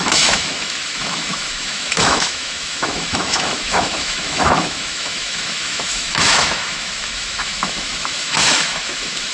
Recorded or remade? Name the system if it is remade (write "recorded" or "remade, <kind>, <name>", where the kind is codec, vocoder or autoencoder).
remade, autoencoder, DAC-VAE